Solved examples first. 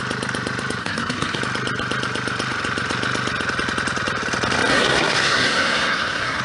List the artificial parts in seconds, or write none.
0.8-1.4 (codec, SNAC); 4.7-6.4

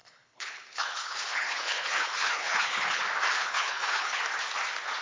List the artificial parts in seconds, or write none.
0.0-3.0 (codec, HILCodec); 3.4-4.2

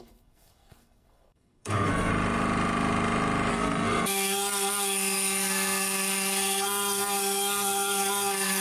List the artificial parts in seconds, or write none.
0.0-2.1 (codec, SNAC); 3.5-8.6

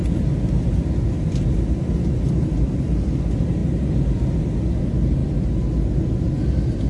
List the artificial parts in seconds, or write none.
none

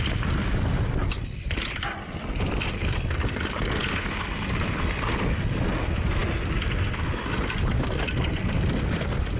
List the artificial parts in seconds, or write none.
none

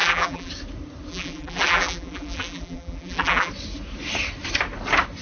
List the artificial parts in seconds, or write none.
0.0-0.5 (vocoder, BigVGAN v2); 1.1-3.5